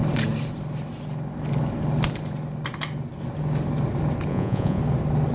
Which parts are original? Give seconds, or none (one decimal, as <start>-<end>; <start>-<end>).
0.0-4.3; 4.8-5.3